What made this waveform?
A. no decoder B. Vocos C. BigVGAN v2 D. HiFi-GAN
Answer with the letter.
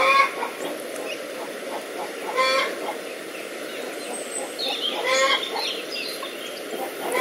A